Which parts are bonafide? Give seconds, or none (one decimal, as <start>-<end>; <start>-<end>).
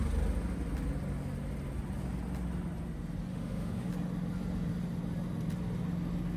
0.0-3.3; 3.9-6.4